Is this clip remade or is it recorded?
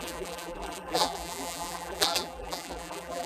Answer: remade